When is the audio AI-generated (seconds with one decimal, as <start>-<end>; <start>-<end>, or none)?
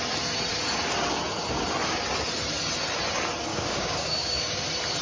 3.5-4.6